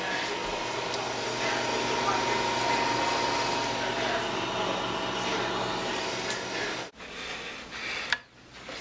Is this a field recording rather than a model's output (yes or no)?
yes